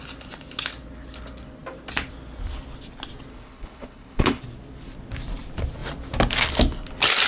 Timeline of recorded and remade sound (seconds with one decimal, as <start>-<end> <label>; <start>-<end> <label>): 0.0-3.3 recorded; 3.3-4.4 remade; 4.4-7.3 recorded